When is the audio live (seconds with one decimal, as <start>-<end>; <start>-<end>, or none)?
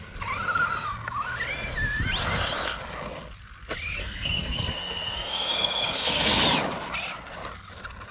0.0-4.0; 6.4-8.1